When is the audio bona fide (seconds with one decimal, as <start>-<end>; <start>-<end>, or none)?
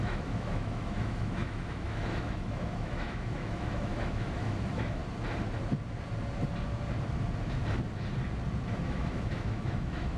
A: 5.0-8.8